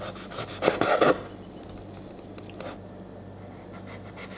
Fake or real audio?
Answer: real